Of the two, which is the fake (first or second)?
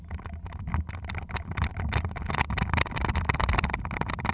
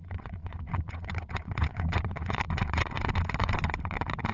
second